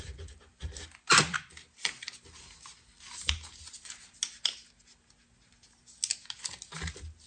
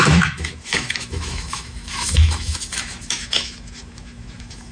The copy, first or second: second